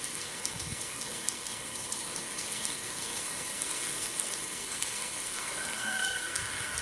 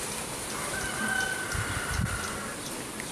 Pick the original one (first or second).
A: second